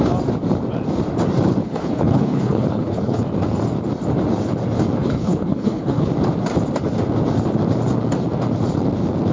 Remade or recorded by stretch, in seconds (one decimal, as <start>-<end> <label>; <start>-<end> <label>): 0.0-1.6 recorded; 1.6-3.2 remade; 3.2-5.0 recorded; 5.0-6.1 remade; 6.1-9.3 recorded